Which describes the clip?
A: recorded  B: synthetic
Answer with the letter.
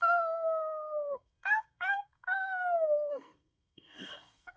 B